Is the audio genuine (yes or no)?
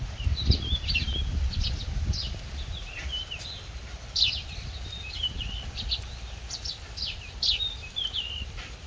no